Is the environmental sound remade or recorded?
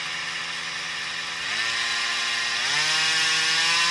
recorded